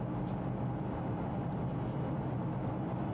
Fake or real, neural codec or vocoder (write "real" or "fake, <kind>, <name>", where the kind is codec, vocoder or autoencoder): real